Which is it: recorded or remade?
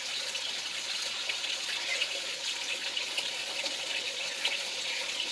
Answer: remade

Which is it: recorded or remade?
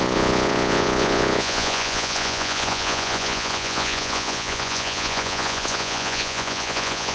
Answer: remade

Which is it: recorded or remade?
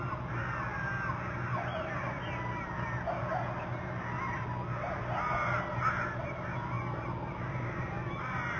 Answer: recorded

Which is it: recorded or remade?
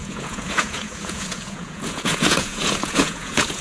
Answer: remade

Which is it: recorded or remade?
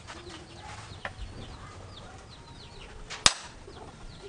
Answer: recorded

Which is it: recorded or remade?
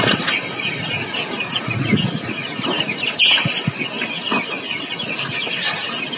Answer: recorded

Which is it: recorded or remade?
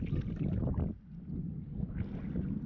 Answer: recorded